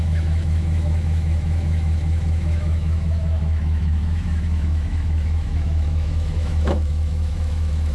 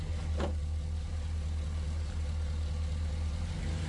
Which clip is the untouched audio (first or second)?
second